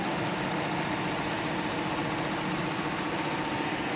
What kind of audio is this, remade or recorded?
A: recorded